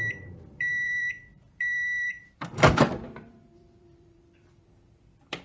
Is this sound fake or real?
fake